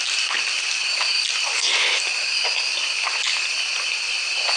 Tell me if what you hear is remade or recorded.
recorded